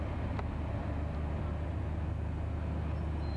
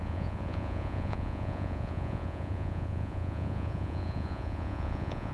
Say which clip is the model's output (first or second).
second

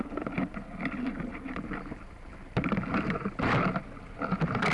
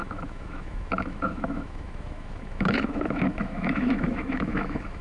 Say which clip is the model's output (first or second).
second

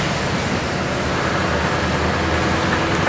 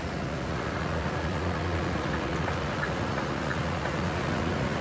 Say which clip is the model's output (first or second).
second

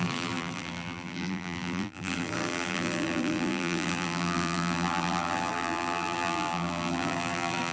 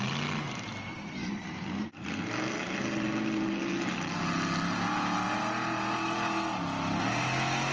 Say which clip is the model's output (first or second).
first